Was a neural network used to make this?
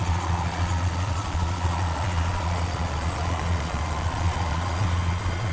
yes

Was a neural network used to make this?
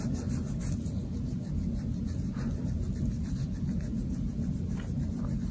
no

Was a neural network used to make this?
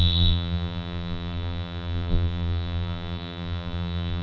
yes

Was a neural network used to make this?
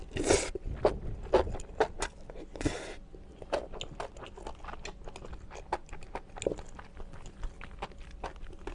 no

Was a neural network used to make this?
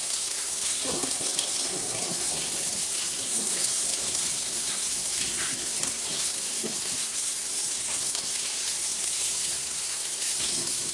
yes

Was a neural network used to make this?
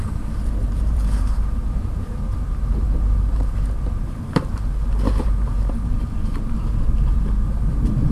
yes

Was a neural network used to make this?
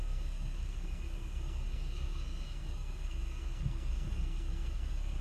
yes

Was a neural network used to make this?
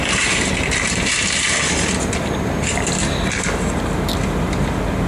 yes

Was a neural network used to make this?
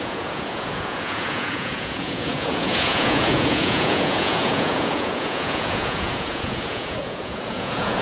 yes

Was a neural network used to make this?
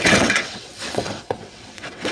yes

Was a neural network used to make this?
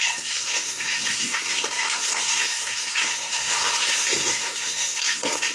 yes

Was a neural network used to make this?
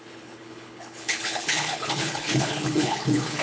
yes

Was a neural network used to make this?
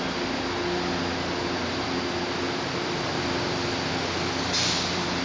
no